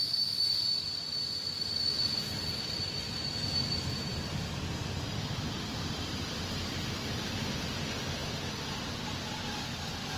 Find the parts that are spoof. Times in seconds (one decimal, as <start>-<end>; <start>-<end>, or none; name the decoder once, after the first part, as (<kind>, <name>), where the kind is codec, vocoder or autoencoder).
none